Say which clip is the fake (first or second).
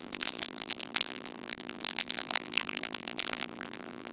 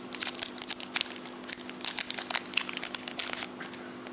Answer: first